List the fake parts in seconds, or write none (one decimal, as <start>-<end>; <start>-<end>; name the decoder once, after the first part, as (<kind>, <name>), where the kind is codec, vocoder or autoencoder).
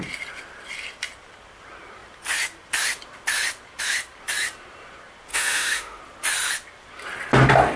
5.3-6.0 (autoencoder, DAC-VAE)